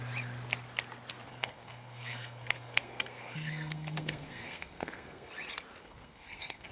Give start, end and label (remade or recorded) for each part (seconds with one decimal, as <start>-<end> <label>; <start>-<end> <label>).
0.0-1.3 recorded; 1.3-5.3 remade; 5.3-5.8 recorded; 5.8-6.7 remade